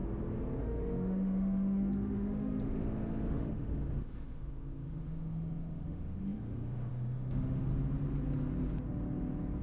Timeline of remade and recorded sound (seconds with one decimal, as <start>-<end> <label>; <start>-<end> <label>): 0.0-0.6 recorded; 0.6-7.7 remade; 7.7-9.6 recorded